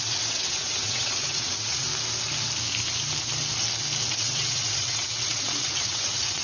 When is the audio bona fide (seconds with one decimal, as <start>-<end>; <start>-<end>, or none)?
1.9-4.1